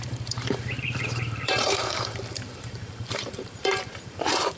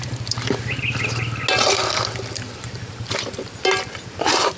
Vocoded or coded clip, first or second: first